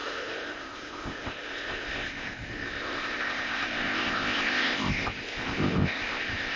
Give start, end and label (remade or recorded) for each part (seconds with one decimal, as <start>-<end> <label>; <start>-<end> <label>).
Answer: 0.0-6.6 remade